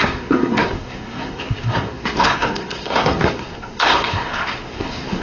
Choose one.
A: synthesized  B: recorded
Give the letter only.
A